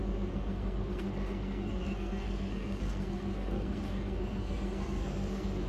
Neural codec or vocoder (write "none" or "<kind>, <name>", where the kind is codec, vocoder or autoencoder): codec, SNAC